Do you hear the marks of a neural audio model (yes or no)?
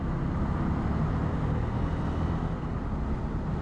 no